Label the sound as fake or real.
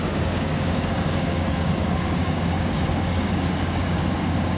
fake